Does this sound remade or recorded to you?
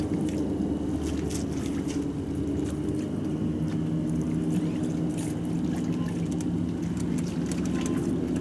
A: recorded